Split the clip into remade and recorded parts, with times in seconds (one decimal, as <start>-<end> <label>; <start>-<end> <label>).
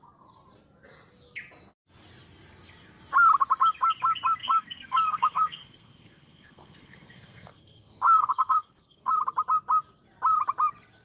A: 0.0-4.4 recorded; 4.4-9.1 remade; 9.1-11.0 recorded